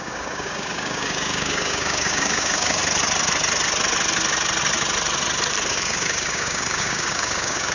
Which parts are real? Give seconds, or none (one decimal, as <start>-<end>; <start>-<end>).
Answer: 2.8-5.7